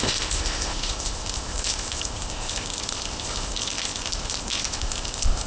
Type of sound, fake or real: fake